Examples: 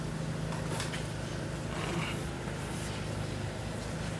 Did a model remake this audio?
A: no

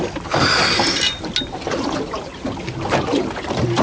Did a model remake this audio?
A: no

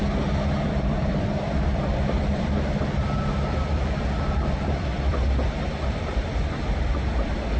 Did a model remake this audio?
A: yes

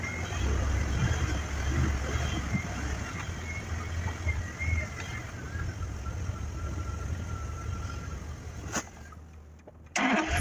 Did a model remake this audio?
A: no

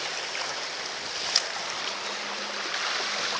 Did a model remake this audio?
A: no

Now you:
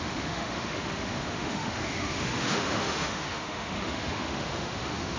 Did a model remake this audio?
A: yes